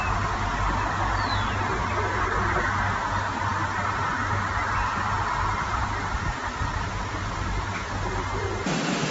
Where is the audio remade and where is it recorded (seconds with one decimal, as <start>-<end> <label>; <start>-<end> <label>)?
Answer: 0.0-9.1 recorded